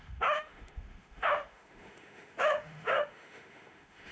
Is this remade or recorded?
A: remade